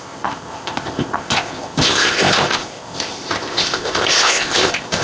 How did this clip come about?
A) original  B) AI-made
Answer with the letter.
B